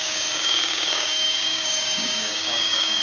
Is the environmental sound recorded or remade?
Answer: remade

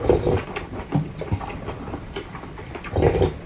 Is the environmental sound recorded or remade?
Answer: remade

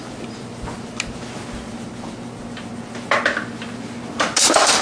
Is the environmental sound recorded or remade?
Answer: recorded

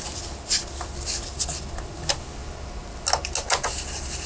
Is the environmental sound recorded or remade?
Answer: recorded